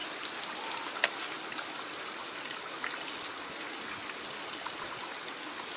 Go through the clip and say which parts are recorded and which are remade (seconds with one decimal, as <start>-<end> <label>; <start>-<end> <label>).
0.0-5.8 recorded